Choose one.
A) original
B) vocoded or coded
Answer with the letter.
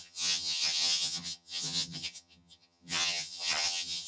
B